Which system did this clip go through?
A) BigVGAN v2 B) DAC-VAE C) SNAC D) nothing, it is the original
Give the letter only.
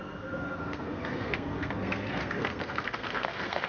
C